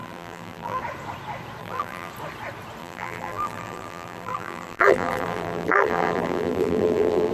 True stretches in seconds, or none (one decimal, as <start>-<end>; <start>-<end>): 0.8-1.6; 2.1-2.8

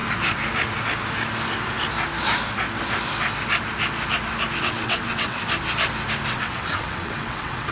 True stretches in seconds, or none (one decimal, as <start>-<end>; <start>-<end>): 0.0-4.6; 5.4-6.3

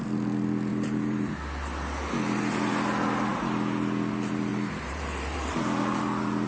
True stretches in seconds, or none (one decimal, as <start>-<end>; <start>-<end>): 0.0-0.7; 1.3-4.5; 5.5-6.5

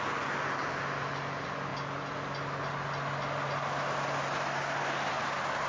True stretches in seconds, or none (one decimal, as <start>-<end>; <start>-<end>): 0.0-5.7

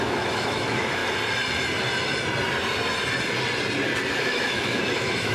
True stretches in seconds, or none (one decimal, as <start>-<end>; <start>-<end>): 1.0-4.1

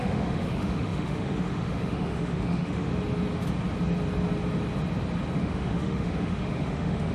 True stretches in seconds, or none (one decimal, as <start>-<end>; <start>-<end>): 2.9-5.4

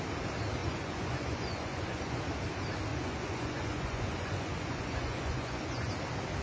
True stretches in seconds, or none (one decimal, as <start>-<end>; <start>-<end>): 0.0-0.6; 2.2-2.9; 5.9-6.4

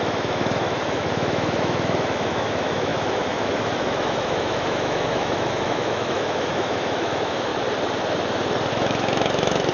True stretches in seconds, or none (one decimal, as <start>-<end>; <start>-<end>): 7.5-8.7